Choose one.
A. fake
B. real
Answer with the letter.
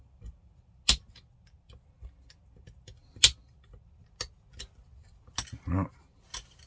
B